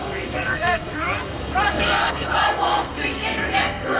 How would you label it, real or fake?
fake